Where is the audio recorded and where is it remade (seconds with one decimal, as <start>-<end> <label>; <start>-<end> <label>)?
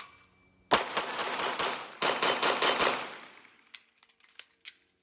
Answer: 0.0-5.0 recorded